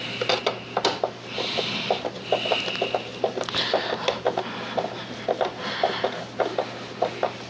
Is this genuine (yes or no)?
yes